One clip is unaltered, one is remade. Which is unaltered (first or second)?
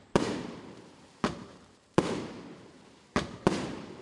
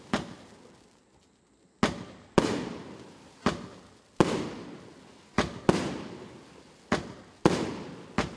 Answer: second